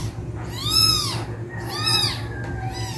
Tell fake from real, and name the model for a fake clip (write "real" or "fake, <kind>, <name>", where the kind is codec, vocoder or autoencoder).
real